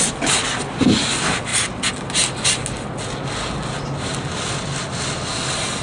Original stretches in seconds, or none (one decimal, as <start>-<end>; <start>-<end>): 0.0-5.8